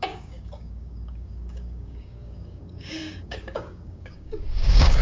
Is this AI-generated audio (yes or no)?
yes